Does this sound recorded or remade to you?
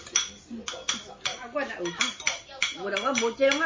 recorded